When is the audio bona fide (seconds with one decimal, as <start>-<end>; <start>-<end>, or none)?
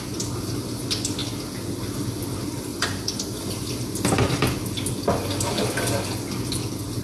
0.0-2.7; 3.7-7.0